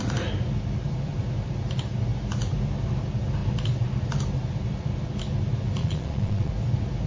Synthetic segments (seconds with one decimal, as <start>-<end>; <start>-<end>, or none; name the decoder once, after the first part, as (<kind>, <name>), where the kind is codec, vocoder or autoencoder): 5.8-6.5 (vocoder, Vocos)